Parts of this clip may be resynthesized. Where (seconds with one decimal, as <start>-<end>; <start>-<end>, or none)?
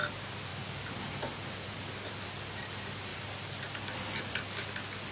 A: none